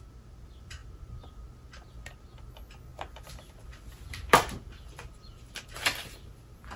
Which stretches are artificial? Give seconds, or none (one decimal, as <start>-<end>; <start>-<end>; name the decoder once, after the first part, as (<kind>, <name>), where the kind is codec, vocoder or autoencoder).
2.9-5.6 (vocoder, BigVGAN v2)